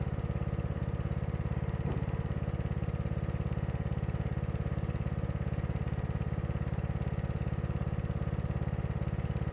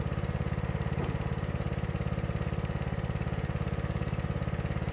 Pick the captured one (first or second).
first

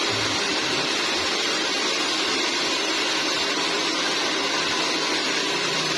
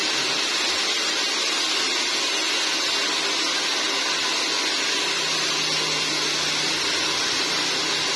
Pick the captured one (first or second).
second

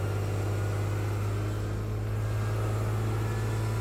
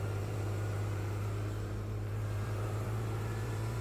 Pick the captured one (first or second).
first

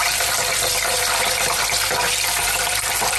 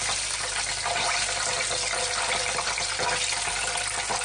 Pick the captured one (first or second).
second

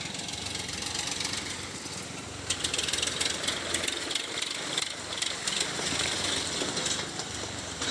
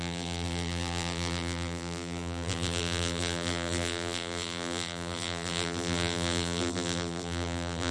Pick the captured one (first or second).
first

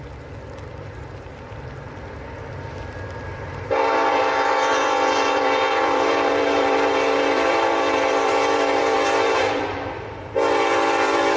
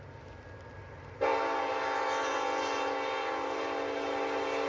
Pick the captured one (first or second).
second